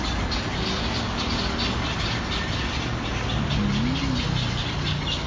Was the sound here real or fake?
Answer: real